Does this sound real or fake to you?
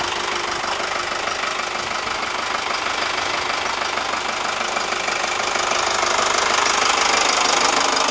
real